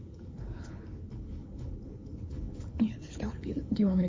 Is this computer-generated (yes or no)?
yes